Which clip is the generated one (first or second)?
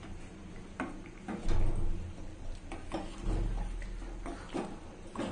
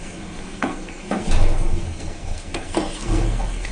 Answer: second